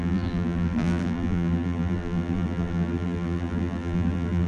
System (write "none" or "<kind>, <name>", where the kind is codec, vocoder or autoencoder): vocoder, BigVGAN v2